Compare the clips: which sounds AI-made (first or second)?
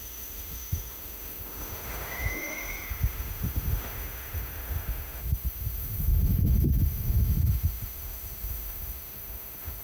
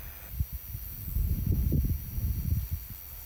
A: first